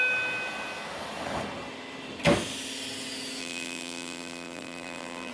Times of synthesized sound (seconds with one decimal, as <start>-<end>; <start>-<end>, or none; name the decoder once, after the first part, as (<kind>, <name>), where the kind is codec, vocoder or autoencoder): 3.4-5.3 (vocoder, BigVGAN v2)